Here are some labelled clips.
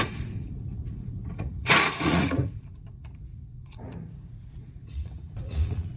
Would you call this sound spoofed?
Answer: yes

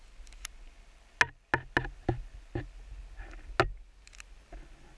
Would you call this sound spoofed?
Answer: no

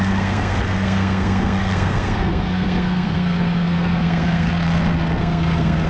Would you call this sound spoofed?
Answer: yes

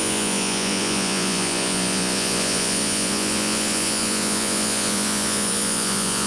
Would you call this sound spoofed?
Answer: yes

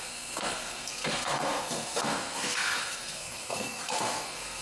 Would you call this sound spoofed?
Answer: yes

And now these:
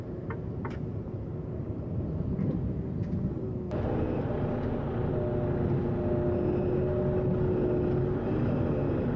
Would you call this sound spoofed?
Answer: no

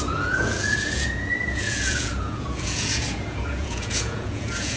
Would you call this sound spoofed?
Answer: yes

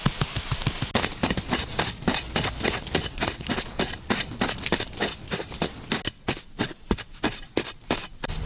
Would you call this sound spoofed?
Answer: no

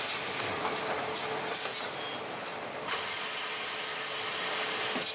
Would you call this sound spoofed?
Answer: no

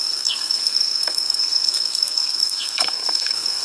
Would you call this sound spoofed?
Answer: yes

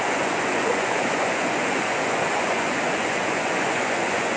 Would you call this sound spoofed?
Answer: yes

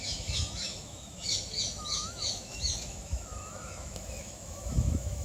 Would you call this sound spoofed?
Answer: yes